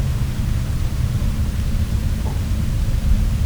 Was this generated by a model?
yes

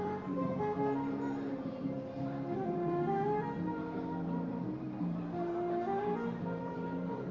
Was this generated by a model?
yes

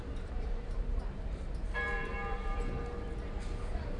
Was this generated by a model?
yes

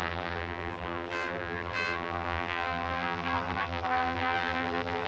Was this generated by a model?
yes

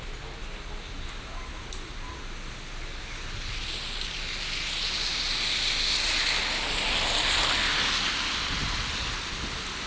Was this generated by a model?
no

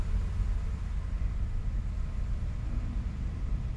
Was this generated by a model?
no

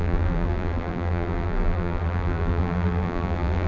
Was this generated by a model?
yes